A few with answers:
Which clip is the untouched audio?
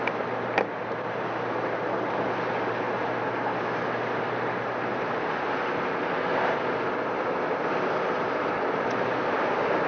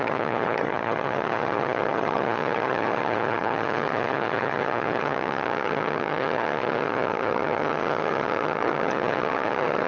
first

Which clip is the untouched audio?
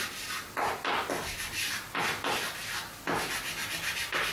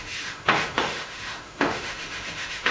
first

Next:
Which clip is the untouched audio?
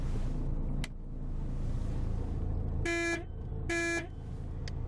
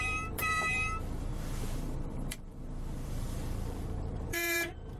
first